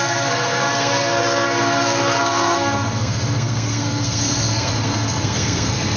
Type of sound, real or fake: fake